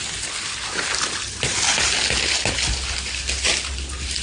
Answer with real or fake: real